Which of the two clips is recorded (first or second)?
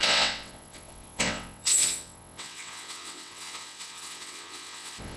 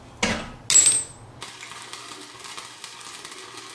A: second